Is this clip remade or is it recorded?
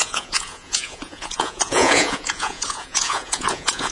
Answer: remade